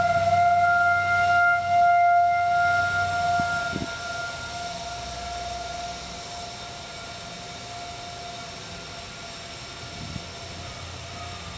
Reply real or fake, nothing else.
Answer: real